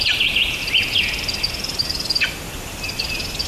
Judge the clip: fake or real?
real